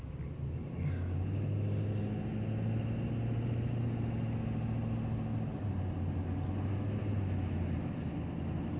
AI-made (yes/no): no